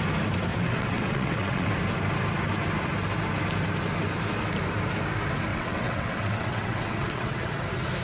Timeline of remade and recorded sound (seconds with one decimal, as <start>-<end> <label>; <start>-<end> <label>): 0.0-0.5 recorded; 0.5-1.7 remade; 1.7-5.5 recorded; 5.5-7.6 remade; 7.6-8.0 recorded